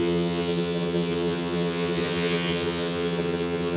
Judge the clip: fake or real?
fake